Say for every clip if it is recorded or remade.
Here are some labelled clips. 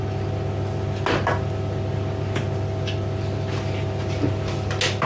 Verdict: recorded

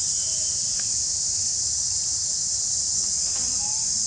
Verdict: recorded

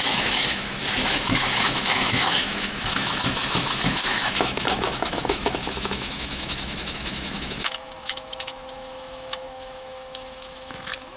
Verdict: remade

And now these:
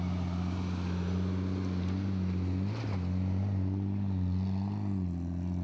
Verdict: recorded